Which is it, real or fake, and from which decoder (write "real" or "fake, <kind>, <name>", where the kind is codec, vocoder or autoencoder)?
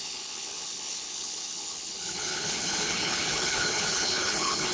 fake, codec, HILCodec